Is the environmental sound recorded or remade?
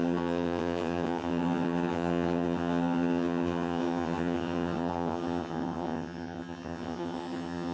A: remade